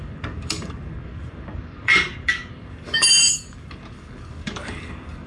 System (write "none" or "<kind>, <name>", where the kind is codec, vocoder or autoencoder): codec, DAC